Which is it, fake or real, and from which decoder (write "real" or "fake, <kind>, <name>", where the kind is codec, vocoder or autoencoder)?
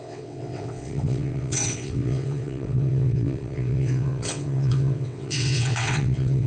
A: fake, vocoder, WaveNeXt